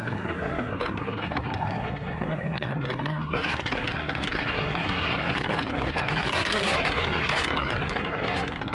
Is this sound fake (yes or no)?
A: yes